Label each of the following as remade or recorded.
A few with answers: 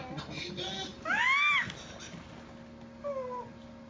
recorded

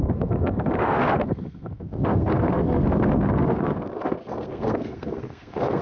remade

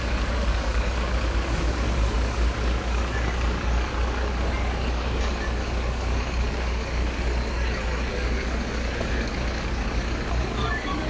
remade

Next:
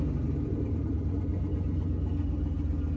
recorded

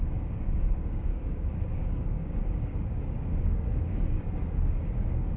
remade